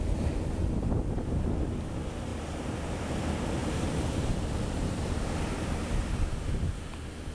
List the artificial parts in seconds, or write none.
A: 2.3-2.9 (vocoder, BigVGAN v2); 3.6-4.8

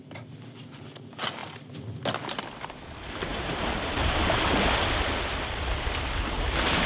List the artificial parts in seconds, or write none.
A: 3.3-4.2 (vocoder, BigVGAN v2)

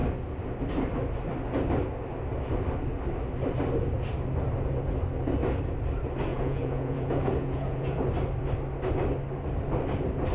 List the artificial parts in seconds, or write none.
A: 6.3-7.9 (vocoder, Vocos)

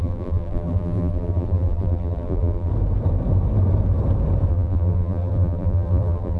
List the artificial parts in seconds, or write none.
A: 0.0-2.7 (vocoder, BigVGAN v2); 4.5-6.4

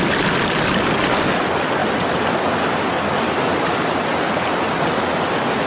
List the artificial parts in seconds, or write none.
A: none

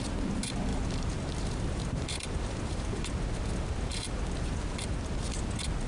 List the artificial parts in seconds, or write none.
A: 0.7-3.4 (vocoder, BigVGAN v2); 3.9-5.0

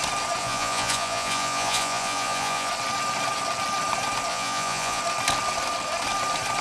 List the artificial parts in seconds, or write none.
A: 0.4-2.7 (vocoder, Vocos); 4.3-5.0